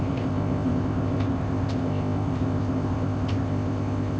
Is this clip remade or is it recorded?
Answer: remade